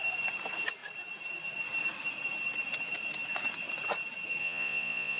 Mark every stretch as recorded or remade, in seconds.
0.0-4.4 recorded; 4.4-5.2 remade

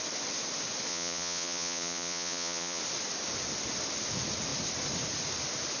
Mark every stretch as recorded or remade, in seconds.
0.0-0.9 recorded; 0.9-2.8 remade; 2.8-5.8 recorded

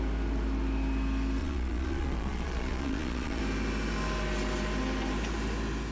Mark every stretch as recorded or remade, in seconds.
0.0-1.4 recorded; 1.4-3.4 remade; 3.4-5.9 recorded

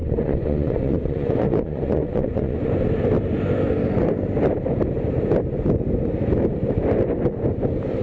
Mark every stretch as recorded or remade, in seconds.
0.0-2.7 remade; 2.7-8.0 recorded

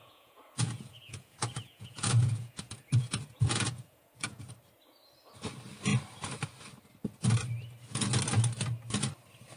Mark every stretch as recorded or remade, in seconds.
0.0-4.5 remade; 4.5-9.6 recorded

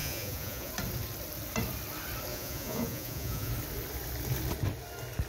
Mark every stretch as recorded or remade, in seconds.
0.0-0.7 remade; 0.7-2.3 recorded; 2.3-3.5 remade; 3.5-5.3 recorded

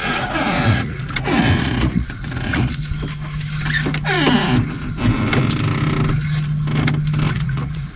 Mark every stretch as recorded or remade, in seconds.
0.0-2.8 remade; 2.8-7.3 recorded; 7.3-8.0 remade

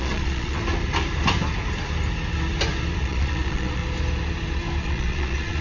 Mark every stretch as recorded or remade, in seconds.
0.0-0.6 remade; 0.6-3.0 recorded; 3.0-3.8 remade; 3.8-4.8 recorded; 4.8-5.6 remade